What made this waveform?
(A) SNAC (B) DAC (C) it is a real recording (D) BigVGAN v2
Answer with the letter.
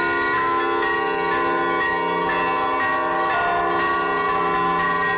C